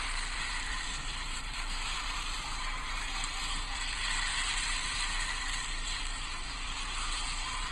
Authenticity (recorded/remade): remade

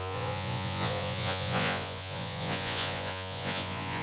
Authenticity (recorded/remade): remade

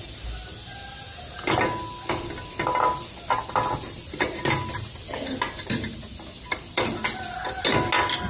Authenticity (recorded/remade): recorded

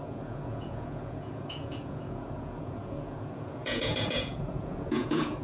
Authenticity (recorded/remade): remade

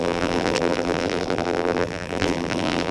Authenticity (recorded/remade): remade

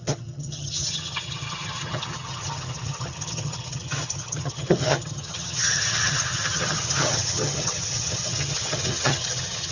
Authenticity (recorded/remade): remade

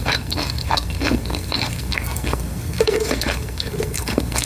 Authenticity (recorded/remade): remade